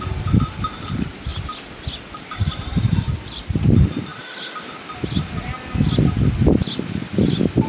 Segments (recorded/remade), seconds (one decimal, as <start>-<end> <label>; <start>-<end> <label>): 0.0-1.3 remade; 1.3-2.2 recorded; 2.2-4.1 remade; 4.1-7.7 recorded